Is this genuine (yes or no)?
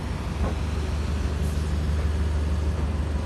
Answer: yes